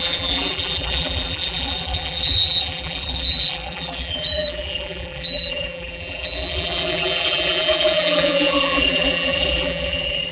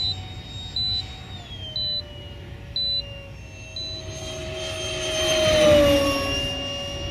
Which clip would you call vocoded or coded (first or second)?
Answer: first